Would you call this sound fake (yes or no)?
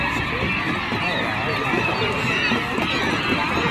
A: no